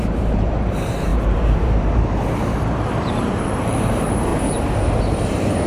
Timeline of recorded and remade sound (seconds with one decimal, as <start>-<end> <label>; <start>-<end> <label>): 0.0-4.3 remade; 4.3-5.7 recorded